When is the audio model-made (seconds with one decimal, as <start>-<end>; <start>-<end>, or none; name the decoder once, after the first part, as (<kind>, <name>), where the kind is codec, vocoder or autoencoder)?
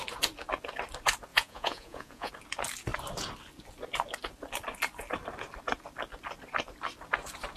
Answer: 1.3-2.3 (vocoder, Vocos)